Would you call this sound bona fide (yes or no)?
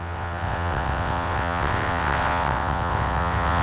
no